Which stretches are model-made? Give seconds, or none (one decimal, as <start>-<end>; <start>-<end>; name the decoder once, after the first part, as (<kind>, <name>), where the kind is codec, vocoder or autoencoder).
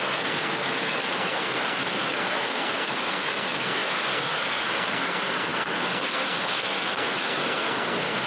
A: 0.0-8.3 (codec, SNAC)